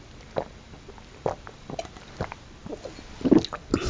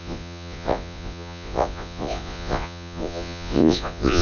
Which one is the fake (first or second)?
second